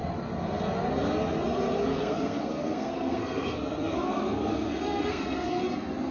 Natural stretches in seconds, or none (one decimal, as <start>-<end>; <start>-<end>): 0.0-1.9; 5.6-6.1

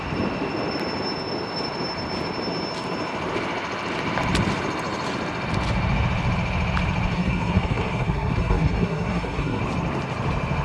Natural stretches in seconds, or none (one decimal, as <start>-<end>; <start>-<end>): 0.0-7.1; 9.6-10.6

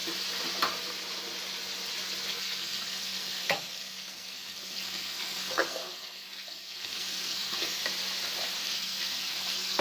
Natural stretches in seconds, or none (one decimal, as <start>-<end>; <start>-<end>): 0.0-2.3; 7.8-8.6

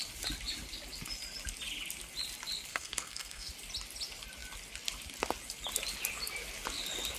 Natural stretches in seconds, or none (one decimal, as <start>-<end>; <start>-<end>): 0.0-2.7; 3.5-7.2

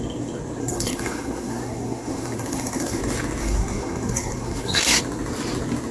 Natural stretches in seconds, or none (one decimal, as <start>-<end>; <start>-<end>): 0.0-0.6; 3.0-3.4; 5.0-5.9

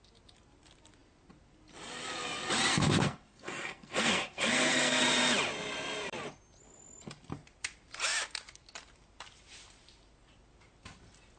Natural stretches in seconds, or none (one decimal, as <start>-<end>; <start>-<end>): 0.0-2.7; 5.0-11.4